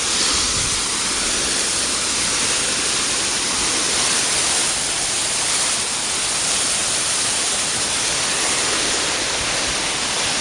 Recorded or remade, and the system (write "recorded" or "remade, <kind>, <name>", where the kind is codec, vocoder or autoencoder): recorded